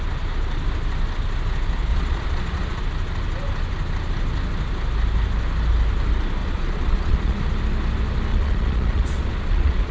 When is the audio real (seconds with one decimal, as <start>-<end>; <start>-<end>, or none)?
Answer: 0.0-1.9; 2.8-6.4; 7.4-8.3